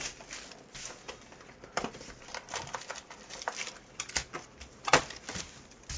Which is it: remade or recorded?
recorded